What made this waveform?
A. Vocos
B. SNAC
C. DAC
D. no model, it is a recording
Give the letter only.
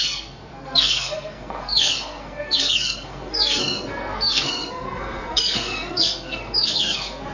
B